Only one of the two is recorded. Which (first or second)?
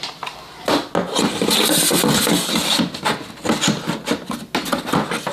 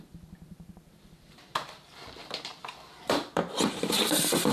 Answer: first